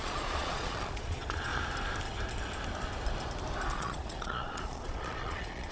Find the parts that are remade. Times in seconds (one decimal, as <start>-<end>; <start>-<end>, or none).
0.0-1.5; 3.7-5.7